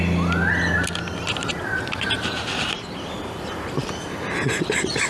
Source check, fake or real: real